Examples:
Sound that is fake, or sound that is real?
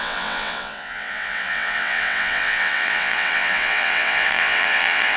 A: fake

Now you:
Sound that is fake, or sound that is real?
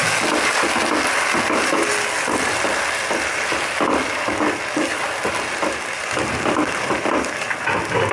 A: real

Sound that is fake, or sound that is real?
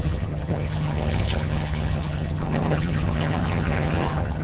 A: fake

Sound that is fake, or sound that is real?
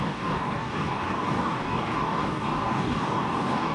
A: fake